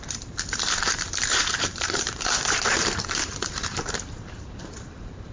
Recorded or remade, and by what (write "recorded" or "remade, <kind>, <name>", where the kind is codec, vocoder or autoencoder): remade, vocoder, BigVGAN v2